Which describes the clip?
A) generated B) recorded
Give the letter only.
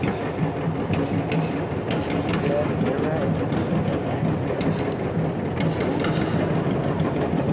B